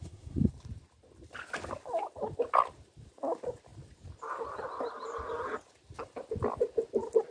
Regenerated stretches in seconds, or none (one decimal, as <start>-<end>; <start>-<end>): 0.0-0.5